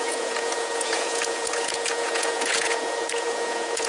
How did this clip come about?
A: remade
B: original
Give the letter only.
A